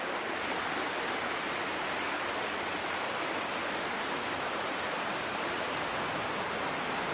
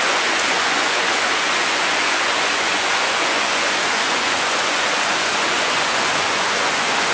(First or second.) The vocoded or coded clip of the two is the second